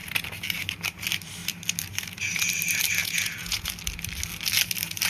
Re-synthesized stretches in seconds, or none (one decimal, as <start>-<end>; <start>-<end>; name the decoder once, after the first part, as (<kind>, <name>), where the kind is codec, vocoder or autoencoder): 3.0-3.7 (vocoder, Vocos)